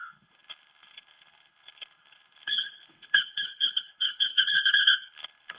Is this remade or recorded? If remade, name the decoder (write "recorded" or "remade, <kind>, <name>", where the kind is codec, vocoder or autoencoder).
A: remade, codec, HILCodec